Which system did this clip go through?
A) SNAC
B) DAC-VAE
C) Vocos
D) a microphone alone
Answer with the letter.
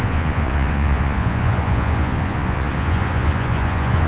C